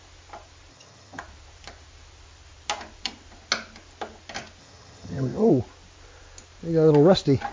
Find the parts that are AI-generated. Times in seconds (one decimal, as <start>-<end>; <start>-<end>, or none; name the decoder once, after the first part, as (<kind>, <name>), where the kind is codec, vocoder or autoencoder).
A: 0.7-1.2 (vocoder, HiFi-GAN); 4.6-5.5